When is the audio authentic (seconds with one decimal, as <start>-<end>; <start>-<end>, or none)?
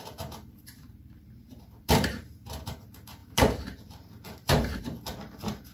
none